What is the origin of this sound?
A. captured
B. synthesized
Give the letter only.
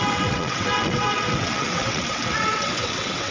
B